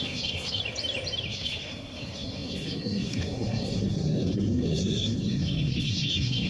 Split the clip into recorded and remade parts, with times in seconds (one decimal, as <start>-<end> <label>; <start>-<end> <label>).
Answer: 0.0-0.6 remade; 0.6-1.3 recorded; 1.3-6.5 remade